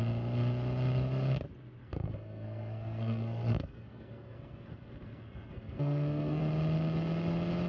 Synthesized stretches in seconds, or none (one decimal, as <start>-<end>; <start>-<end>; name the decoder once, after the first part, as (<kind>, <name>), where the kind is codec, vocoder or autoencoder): 1.8-6.4 (codec, SNAC)